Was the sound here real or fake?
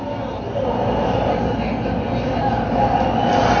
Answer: real